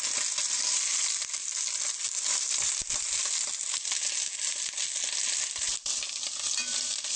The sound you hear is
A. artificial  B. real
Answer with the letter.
B